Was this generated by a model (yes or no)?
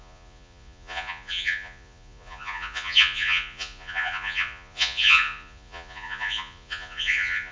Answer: yes